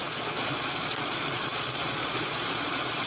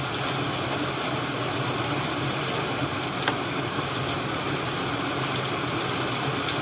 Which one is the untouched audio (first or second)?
second